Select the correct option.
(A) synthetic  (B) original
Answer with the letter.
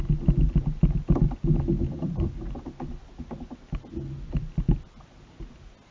B